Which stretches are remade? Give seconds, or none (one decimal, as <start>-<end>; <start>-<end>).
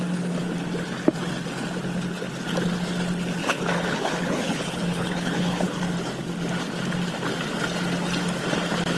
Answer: 3.4-5.8